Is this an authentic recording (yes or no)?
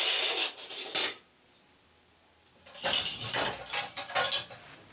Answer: yes